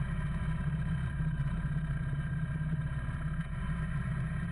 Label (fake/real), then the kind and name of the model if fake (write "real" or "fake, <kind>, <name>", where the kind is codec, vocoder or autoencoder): fake, vocoder, Vocos